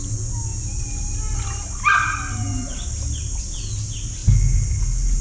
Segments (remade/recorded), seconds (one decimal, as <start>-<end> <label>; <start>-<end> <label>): 0.0-5.2 recorded